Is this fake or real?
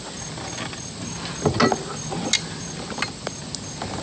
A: real